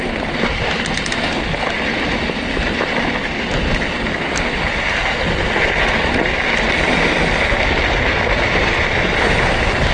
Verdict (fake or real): real